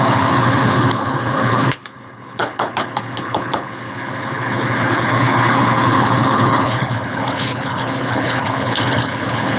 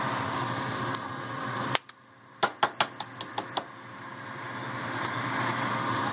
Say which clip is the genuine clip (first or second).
second